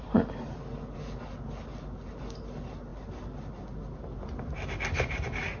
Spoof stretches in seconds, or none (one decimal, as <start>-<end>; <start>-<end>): none

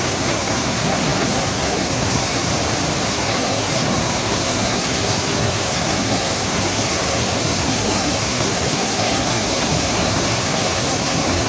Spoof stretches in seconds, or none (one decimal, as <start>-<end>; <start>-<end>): 0.0-2.5; 3.1-11.5